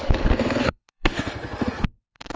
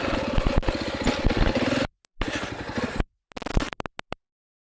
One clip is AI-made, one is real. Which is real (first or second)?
second